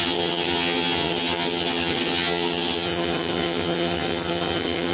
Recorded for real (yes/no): no